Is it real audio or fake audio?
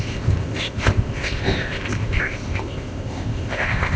fake